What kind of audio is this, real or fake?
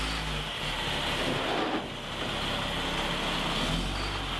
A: real